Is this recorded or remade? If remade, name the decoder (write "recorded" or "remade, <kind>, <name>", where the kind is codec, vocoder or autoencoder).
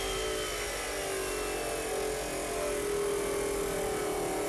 recorded